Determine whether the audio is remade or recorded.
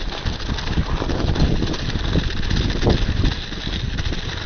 recorded